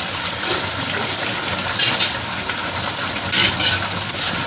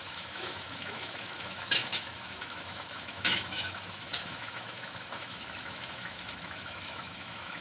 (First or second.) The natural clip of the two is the first